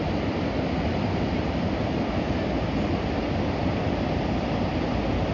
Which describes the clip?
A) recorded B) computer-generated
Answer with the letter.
A